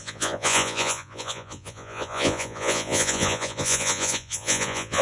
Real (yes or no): no